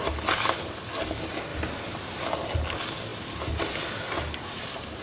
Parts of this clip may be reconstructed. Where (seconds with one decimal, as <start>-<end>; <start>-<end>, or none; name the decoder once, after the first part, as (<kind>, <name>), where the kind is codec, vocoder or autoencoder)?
none